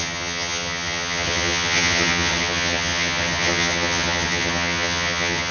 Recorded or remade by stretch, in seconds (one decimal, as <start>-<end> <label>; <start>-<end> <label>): 0.0-5.5 remade